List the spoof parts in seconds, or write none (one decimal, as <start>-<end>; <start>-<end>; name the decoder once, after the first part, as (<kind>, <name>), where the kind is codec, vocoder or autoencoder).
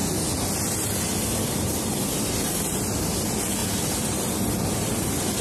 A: none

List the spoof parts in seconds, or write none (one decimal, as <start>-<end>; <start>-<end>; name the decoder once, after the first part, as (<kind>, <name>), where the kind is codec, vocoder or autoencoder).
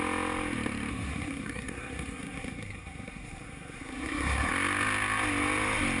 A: 0.9-4.5 (codec, SNAC)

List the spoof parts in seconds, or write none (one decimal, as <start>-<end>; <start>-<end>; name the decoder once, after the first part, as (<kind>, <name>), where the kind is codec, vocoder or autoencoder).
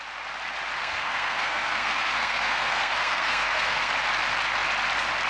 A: 0.8-3.9 (codec, SNAC)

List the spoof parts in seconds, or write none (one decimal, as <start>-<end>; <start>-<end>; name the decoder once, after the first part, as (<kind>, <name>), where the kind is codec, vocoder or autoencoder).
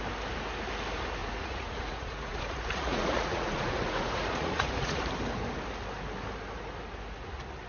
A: 1.2-5.0 (vocoder, Vocos)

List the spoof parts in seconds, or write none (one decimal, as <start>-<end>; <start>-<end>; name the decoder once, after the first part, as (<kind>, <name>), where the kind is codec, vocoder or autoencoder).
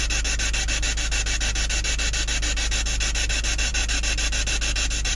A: none